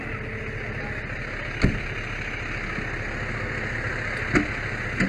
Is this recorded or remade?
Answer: recorded